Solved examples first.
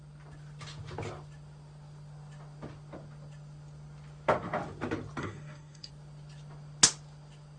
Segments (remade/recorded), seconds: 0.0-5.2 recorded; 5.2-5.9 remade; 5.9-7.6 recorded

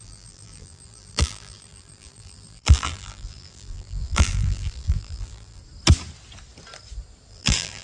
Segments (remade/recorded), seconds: 0.0-5.6 remade; 5.6-7.3 recorded; 7.3-7.8 remade

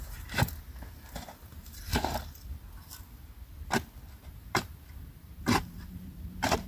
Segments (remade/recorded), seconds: 0.0-1.9 remade; 1.9-4.2 recorded; 4.2-6.7 remade

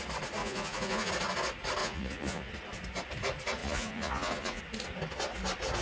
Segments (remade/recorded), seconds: 0.0-0.4 recorded; 0.4-1.1 remade; 1.1-1.8 recorded; 1.8-2.5 remade; 2.5-3.6 recorded; 3.6-4.6 remade; 4.6-5.8 recorded

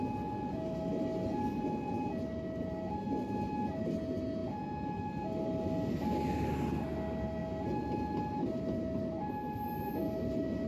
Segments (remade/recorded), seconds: 0.0-10.7 recorded

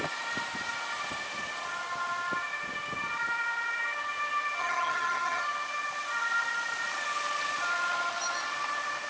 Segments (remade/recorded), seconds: 0.0-4.6 recorded; 4.6-5.4 remade; 5.4-9.1 recorded